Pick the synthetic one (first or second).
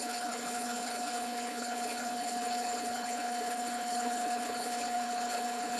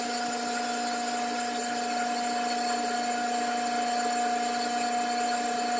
first